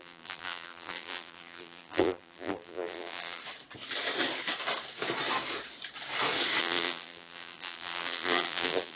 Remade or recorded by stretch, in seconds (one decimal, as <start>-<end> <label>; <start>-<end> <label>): 0.0-3.4 remade; 3.4-6.6 recorded; 6.6-9.0 remade